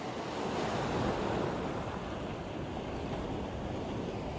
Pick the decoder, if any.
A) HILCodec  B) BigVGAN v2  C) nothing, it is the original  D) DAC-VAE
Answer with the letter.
C